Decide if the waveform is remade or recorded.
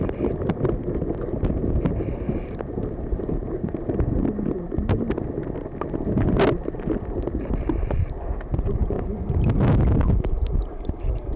recorded